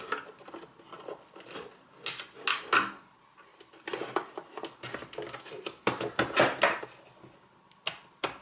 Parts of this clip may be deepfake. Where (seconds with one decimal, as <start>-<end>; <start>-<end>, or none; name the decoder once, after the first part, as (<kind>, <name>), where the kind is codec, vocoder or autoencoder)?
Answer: none